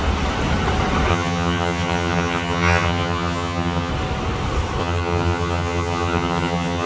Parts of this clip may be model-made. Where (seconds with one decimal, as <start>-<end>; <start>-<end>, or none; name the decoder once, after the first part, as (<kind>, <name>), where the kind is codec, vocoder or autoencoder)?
1.1-3.9 (vocoder, HiFi-GAN); 4.8-6.9